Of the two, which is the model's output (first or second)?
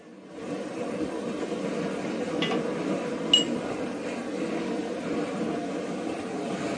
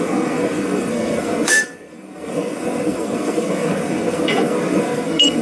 second